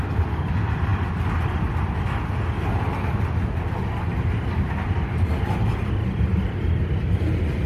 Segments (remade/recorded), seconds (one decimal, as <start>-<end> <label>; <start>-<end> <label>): 0.0-7.7 recorded